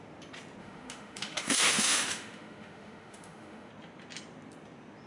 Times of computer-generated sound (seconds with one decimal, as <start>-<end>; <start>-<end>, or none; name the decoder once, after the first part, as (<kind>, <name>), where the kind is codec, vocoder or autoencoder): 0.6-3.7 (autoencoder, DAC-VAE)